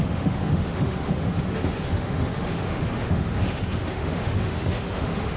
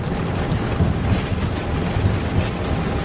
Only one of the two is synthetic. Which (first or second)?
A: first